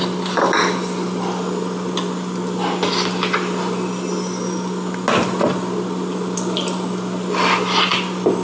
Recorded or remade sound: recorded